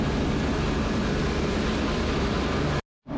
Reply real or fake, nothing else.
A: real